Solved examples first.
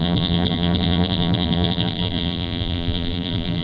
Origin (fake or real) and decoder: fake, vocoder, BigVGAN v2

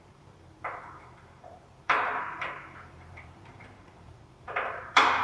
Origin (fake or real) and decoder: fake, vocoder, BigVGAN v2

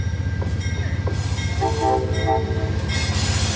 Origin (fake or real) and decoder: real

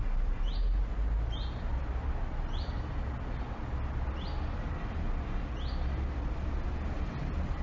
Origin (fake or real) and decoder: real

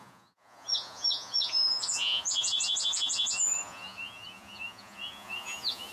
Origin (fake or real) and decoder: fake, vocoder, Vocos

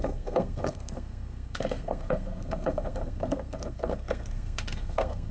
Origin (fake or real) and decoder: fake, codec, SNAC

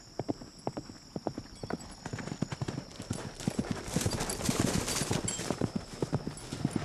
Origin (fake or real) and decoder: real